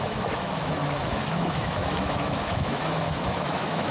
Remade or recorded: remade